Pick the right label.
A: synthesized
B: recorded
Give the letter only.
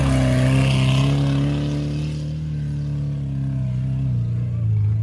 B